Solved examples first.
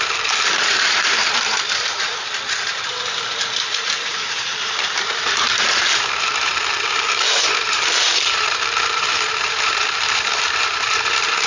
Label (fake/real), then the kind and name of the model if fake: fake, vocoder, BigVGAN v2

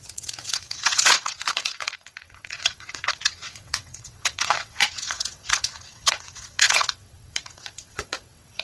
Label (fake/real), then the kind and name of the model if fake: fake, vocoder, WaveNeXt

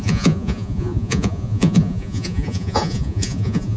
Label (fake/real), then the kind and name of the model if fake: fake, vocoder, Vocos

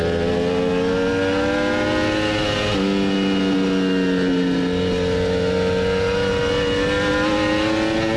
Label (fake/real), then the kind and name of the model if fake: real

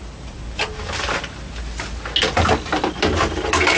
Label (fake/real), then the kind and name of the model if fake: real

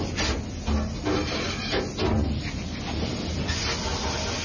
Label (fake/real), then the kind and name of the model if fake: real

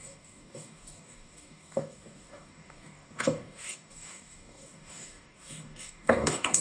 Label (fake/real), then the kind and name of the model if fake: fake, codec, DAC